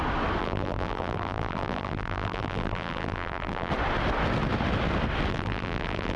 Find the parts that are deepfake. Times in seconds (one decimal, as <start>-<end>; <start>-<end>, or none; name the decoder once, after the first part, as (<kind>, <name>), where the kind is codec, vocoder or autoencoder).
0.4-3.7 (vocoder, BigVGAN v2); 5.3-6.2